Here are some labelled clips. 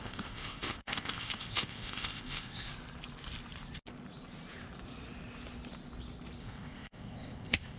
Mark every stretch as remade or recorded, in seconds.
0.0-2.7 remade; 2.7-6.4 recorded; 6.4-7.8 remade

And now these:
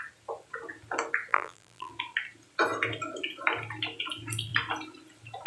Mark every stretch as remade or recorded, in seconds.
0.0-1.3 recorded; 1.3-1.9 remade; 1.9-5.5 recorded

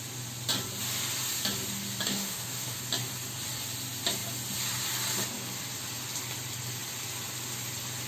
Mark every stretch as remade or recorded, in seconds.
0.0-2.1 recorded; 2.1-2.8 remade; 2.8-8.1 recorded